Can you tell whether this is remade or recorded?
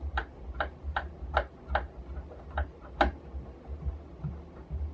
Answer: recorded